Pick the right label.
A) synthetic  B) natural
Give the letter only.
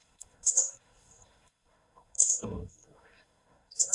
A